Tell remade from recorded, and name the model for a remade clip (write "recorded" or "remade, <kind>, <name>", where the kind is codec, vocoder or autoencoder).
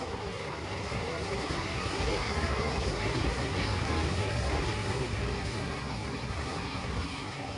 remade, codec, SNAC